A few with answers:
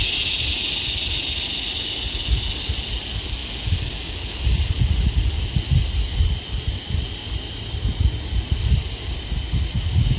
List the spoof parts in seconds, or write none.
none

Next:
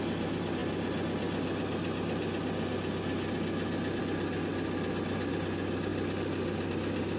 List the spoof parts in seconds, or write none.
none

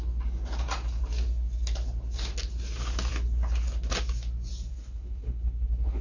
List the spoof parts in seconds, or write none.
4.7-6.0 (codec, HILCodec)